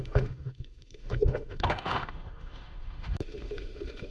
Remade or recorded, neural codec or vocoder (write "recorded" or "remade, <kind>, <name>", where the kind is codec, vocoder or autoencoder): remade, autoencoder, DAC-VAE